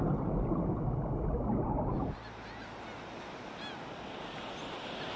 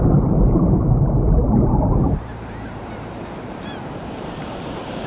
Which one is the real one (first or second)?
first